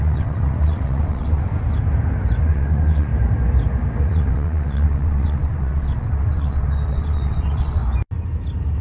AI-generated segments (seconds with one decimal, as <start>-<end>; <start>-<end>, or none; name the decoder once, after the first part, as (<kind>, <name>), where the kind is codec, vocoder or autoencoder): 0.0-1.5 (vocoder, WaveNeXt); 2.4-3.1; 4.0-7.8